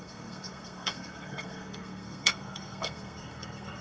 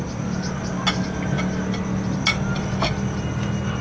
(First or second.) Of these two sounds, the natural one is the second